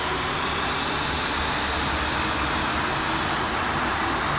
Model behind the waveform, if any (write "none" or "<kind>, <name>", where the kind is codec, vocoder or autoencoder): none